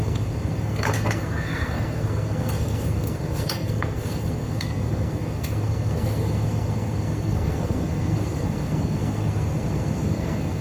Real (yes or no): no